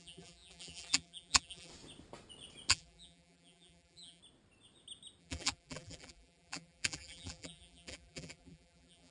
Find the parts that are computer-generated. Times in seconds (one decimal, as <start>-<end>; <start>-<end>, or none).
0.0-1.7; 2.7-4.2; 5.2-9.1